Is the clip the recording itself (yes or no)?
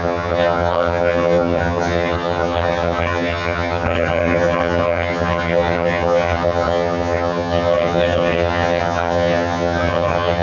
no